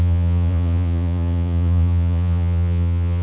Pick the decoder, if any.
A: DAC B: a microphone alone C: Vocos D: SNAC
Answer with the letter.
C